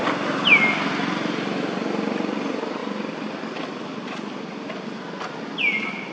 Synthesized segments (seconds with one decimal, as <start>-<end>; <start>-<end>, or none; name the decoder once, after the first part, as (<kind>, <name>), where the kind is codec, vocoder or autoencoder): 2.8-4.7 (vocoder, BigVGAN v2)